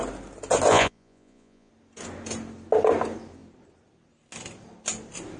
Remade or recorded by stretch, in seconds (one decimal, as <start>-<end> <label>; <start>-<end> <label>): 0.0-0.7 recorded; 0.7-1.7 remade; 1.7-5.4 recorded